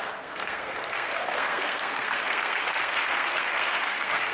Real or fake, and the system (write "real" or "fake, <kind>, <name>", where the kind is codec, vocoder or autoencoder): fake, codec, SNAC